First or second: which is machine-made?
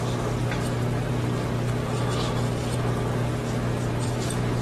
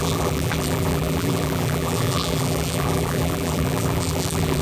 second